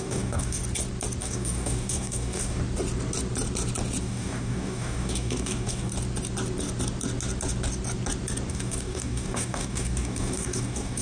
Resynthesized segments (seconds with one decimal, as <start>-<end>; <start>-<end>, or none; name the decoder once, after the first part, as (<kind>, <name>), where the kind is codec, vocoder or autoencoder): 0.0-0.6 (codec, DAC); 1.2-2.6; 4.0-5.9; 8.5-11.0